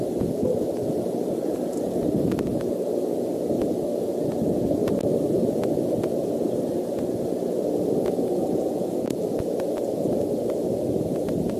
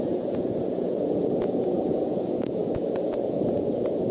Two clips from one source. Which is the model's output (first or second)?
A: second